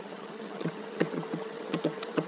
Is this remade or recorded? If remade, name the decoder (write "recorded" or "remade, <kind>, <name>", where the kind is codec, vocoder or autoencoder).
remade, vocoder, HiFi-GAN